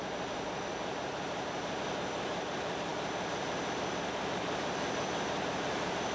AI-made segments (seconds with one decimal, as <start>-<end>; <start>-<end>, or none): none